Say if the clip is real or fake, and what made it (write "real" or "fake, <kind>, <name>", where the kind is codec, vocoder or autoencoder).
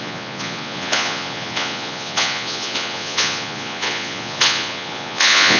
fake, vocoder, Vocos